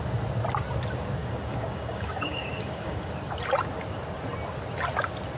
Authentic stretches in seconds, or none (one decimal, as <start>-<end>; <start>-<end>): 0.0-1.2; 3.1-5.4